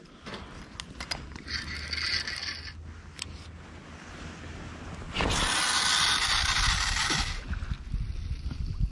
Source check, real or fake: real